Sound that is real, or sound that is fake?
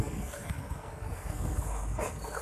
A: fake